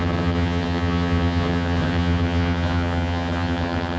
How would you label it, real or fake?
fake